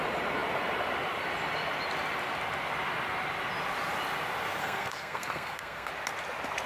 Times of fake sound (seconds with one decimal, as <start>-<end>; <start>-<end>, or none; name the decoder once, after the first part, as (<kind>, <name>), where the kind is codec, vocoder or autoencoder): 4.6-5.9 (codec, SNAC)